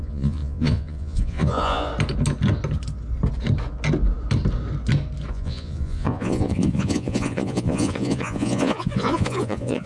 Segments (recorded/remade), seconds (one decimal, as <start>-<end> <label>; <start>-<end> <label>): 0.0-1.9 remade; 1.9-5.3 recorded; 5.3-9.9 remade